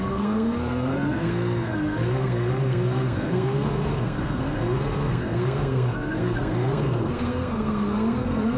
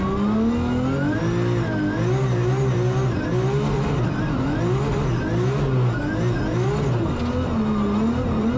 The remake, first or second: first